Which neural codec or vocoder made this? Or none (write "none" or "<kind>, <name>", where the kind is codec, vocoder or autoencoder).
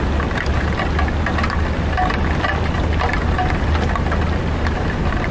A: none